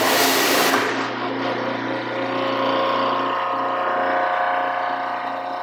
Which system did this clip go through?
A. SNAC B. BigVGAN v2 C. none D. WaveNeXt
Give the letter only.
C